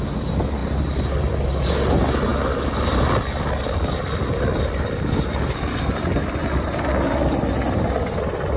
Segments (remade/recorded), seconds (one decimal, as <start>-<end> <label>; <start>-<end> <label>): 0.0-8.6 recorded